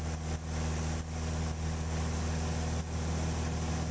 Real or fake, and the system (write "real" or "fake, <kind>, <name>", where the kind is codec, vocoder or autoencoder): real